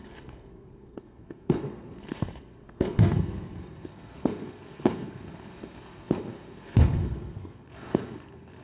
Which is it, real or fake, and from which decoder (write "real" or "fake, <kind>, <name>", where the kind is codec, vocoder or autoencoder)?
fake, codec, SNAC